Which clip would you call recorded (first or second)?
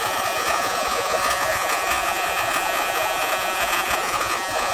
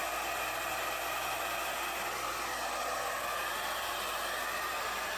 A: second